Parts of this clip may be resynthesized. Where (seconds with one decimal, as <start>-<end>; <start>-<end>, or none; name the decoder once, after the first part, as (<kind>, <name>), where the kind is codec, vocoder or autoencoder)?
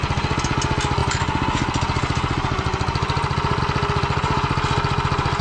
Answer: none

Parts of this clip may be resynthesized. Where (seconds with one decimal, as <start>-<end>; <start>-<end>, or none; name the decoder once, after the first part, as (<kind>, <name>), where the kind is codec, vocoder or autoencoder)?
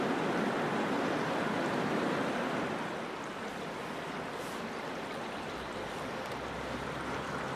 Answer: none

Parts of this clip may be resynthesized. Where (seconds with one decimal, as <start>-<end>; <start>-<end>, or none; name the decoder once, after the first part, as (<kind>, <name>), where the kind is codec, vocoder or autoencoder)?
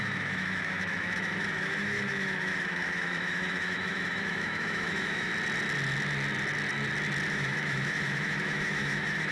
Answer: 0.0-5.3 (autoencoder, DAC-VAE); 7.3-9.3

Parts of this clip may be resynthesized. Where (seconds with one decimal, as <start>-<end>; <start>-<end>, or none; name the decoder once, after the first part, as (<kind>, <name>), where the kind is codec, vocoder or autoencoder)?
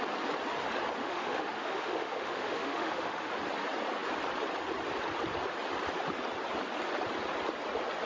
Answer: 1.0-3.3 (autoencoder, DAC-VAE)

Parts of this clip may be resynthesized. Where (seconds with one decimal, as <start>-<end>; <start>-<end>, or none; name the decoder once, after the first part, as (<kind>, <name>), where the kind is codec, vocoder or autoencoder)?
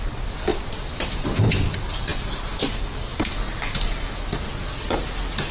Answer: none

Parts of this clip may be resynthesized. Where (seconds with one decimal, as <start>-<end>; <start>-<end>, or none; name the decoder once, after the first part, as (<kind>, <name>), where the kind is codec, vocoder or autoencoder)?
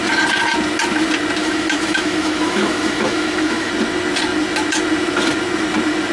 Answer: 1.4-3.7 (autoencoder, DAC-VAE)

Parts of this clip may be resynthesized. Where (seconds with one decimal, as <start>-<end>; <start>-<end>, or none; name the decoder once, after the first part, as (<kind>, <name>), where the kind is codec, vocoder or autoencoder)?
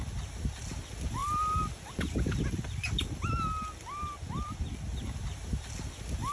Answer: none